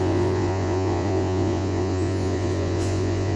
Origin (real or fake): fake